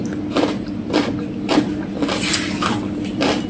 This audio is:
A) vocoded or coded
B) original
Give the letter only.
B